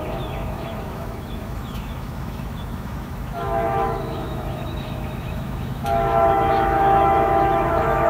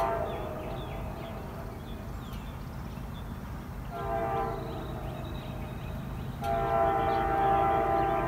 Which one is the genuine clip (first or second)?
second